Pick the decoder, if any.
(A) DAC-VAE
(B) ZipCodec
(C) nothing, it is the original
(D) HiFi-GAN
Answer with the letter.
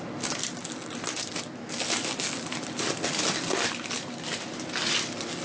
C